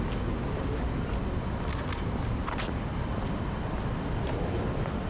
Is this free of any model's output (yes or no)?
yes